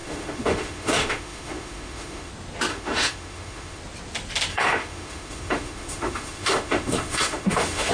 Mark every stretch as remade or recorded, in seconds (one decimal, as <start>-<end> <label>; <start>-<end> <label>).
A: 0.0-2.3 remade; 2.3-2.7 recorded; 2.7-3.8 remade; 3.8-4.5 recorded; 4.5-7.9 remade

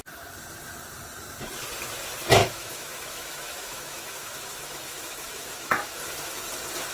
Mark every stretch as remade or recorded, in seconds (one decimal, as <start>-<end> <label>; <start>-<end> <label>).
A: 0.0-2.4 recorded; 2.4-6.0 remade; 6.0-6.9 recorded

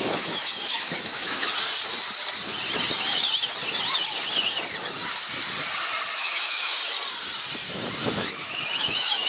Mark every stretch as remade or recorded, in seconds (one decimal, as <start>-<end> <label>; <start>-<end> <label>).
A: 0.0-1.5 remade; 1.5-6.2 recorded; 6.2-6.8 remade; 6.8-8.2 recorded; 8.2-9.3 remade

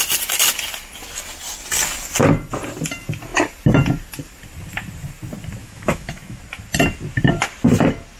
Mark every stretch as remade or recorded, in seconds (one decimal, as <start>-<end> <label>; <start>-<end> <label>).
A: 0.0-5.6 recorded; 5.6-6.4 remade; 6.4-8.2 recorded